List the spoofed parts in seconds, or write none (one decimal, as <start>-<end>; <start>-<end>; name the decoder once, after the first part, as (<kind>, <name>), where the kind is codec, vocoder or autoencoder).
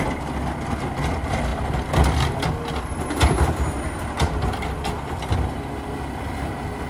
none